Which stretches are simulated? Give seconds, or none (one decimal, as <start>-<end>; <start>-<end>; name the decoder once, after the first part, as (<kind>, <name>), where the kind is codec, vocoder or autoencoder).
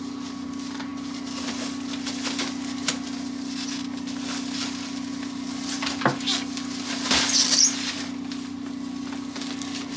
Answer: none